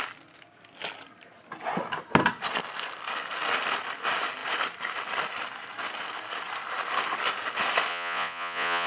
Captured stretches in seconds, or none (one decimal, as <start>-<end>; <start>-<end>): 0.0-7.9